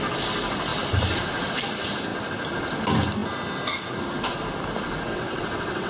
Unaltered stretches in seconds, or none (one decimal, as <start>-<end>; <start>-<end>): 0.0-5.1